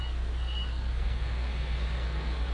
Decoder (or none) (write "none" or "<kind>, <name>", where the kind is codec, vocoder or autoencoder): codec, SNAC